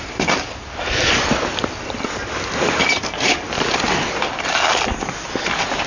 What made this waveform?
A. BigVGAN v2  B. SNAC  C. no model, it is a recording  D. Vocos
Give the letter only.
C